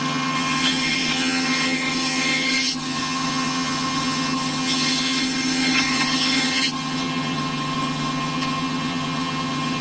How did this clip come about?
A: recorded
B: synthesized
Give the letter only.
B